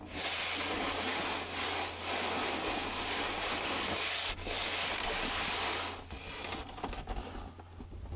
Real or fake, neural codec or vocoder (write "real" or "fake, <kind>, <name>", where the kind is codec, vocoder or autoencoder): real